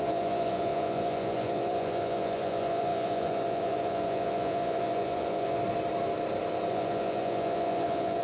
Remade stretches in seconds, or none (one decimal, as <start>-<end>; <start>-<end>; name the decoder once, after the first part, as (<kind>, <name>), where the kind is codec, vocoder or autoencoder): 0.0-5.6 (vocoder, Vocos); 6.7-8.2